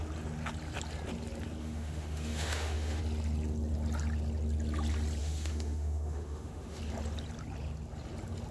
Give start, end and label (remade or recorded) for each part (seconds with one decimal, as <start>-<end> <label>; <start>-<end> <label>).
0.0-1.6 recorded; 1.6-3.0 remade; 3.0-5.2 recorded; 5.2-6.8 remade; 6.8-8.5 recorded